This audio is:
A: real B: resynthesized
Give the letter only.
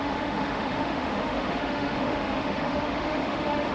B